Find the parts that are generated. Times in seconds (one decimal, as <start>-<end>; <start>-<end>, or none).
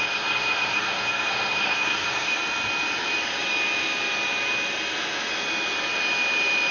0.0-2.4